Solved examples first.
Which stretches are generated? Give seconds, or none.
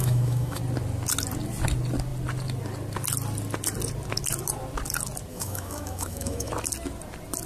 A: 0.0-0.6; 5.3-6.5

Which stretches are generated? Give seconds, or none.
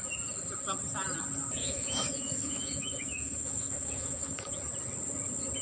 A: 1.6-4.5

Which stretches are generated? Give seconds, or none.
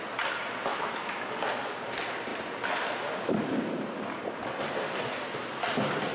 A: 0.7-1.2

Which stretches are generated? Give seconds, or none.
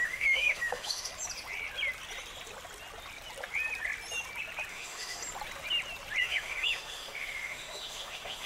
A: 0.0-1.1; 4.7-5.2; 6.2-8.5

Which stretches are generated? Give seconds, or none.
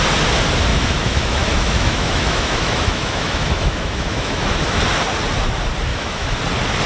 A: 0.7-4.8; 5.9-6.4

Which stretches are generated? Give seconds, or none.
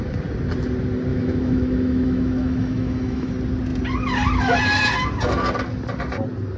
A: 1.1-3.3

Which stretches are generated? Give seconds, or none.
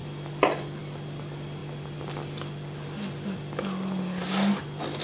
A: none